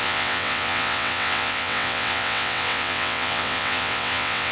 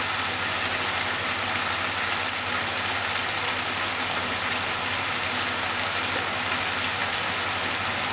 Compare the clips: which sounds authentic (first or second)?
second